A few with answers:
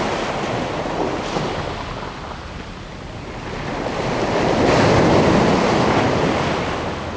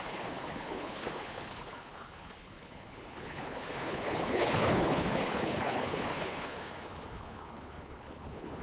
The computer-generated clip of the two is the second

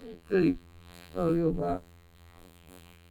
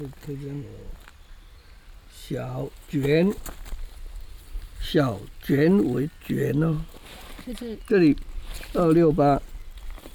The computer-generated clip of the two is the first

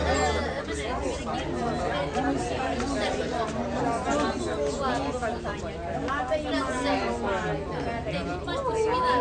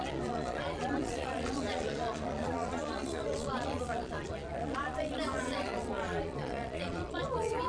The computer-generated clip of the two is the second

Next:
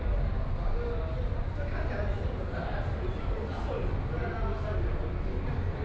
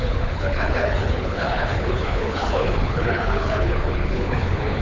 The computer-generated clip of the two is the second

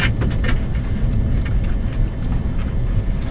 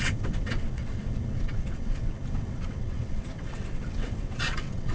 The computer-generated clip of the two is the second